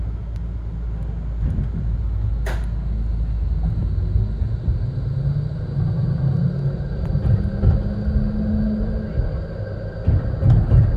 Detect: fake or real real